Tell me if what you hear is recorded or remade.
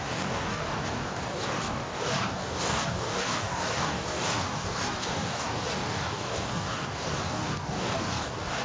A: remade